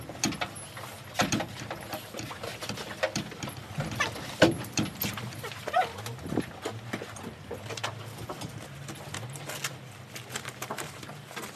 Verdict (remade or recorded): recorded